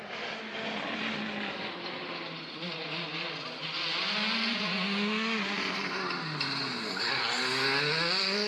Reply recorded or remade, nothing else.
recorded